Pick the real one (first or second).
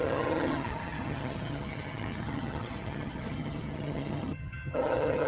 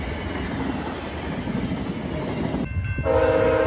second